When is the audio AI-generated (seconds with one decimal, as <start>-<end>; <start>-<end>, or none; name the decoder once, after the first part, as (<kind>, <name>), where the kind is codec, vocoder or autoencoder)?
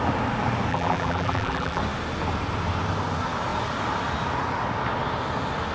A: 0.7-1.8 (vocoder, BigVGAN v2)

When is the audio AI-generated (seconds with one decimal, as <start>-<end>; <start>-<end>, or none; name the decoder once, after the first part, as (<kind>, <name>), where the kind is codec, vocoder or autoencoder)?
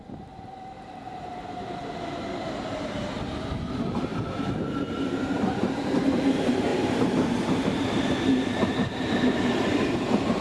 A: 0.0-1.8 (vocoder, BigVGAN v2); 2.6-10.4